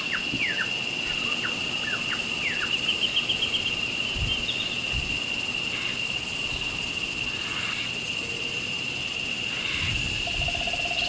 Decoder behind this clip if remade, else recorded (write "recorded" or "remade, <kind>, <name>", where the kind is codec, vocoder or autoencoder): recorded